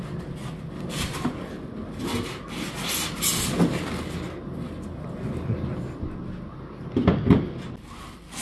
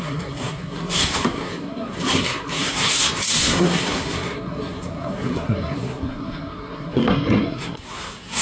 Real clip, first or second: first